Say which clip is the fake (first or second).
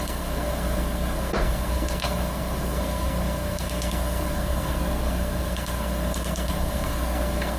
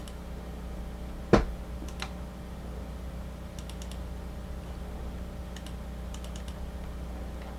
first